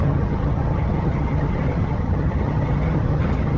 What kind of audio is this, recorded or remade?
remade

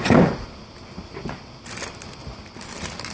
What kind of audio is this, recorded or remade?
recorded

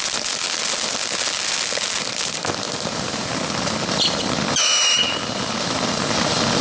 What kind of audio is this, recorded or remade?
recorded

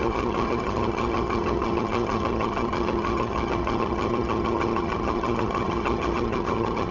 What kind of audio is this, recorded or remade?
remade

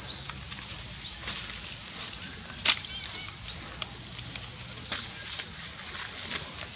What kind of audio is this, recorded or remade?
recorded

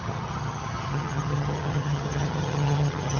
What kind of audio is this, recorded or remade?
remade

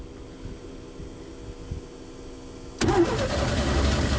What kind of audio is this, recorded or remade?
recorded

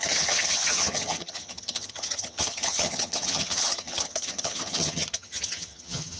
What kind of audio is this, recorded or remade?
remade